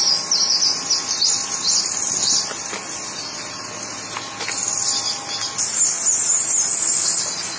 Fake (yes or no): no